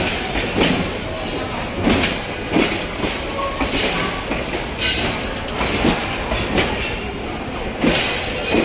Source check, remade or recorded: recorded